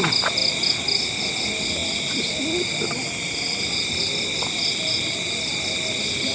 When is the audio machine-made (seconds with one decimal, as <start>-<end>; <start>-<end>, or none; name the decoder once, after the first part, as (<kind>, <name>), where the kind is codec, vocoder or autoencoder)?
none